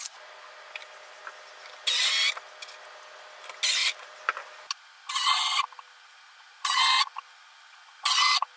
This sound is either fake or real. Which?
real